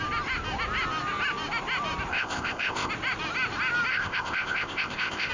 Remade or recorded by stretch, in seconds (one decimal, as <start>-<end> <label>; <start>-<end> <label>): 0.0-2.1 recorded; 2.1-2.9 remade; 2.9-3.9 recorded; 3.9-5.3 remade